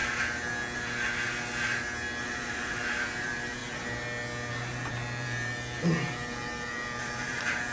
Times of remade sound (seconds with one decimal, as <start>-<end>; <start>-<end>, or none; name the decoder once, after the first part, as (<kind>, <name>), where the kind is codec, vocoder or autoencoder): 2.3-3.6 (vocoder, BigVGAN v2); 4.5-7.7